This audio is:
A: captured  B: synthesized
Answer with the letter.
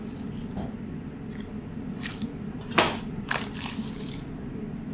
B